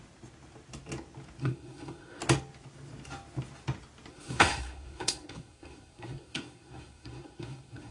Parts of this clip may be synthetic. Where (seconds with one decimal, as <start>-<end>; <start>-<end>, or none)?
1.4-2.2; 4.1-7.9